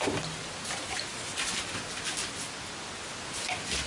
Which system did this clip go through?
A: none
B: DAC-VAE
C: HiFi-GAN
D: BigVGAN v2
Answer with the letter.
A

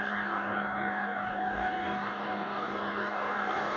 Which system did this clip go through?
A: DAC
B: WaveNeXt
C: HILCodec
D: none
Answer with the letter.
A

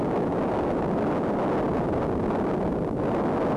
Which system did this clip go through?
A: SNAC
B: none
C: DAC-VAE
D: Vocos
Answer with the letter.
B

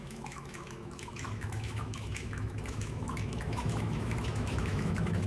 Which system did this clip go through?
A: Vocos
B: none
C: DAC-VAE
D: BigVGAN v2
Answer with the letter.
C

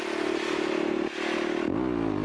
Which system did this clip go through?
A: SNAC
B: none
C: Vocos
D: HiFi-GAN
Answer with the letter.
B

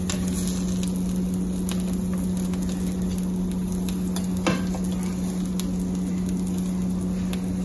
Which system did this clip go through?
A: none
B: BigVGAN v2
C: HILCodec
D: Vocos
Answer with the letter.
A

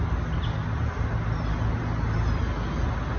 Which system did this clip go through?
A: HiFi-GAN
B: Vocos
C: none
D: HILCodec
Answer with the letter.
C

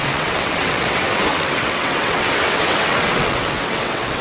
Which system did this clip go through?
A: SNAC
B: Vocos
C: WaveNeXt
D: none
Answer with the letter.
C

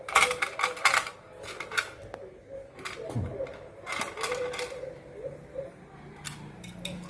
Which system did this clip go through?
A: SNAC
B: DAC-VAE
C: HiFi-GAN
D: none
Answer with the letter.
D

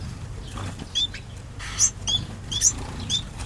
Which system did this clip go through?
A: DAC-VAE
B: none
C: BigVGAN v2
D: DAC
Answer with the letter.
C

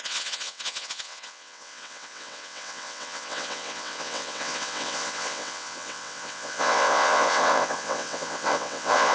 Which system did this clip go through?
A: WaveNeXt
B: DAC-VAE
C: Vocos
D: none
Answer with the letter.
A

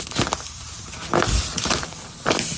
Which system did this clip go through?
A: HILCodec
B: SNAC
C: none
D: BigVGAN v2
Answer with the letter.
C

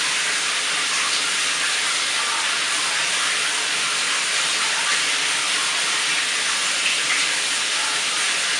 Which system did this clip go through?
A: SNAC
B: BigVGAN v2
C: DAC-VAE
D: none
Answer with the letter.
D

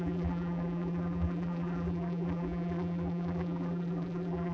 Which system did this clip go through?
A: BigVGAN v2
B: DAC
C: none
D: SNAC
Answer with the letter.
A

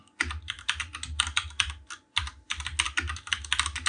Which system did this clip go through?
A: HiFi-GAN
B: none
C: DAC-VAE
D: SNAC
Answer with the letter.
B